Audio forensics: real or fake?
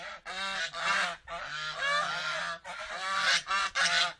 real